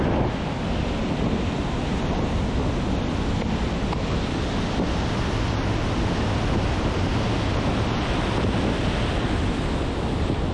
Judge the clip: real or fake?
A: real